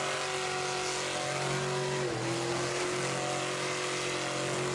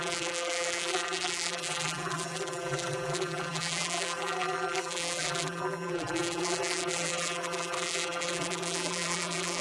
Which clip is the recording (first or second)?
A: first